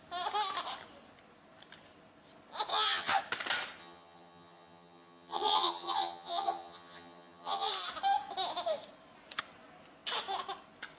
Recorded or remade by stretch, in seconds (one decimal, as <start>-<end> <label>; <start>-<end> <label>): 0.0-2.7 recorded; 2.7-3.2 remade; 3.2-3.8 recorded; 3.8-7.7 remade; 7.7-11.0 recorded